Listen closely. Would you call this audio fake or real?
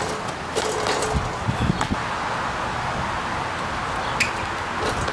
real